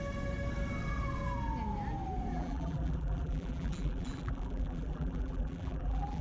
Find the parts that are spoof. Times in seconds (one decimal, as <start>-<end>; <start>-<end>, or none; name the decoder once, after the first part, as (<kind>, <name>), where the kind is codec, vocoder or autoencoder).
2.3-6.2 (vocoder, BigVGAN v2)